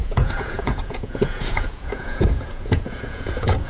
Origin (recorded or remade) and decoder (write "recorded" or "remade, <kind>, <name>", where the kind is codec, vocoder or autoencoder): remade, vocoder, Vocos